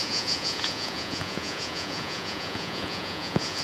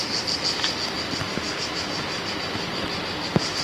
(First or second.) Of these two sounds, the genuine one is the second